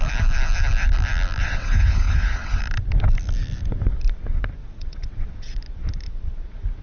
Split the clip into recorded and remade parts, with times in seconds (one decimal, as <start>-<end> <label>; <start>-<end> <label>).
0.0-1.4 recorded; 1.4-2.6 remade; 2.6-4.6 recorded; 4.6-5.6 remade; 5.6-6.8 recorded